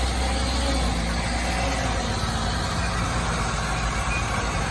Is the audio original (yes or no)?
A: yes